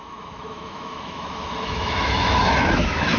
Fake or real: fake